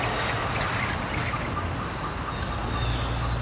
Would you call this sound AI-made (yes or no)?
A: no